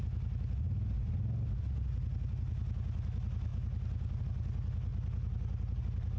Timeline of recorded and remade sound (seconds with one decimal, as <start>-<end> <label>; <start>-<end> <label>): 0.0-6.2 recorded